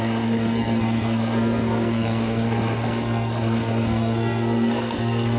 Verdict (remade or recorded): remade